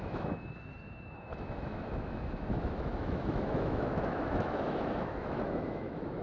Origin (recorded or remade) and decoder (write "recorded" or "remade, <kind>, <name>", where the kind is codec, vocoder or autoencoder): remade, autoencoder, DAC-VAE